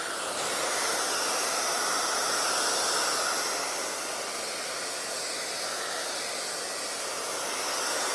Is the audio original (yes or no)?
yes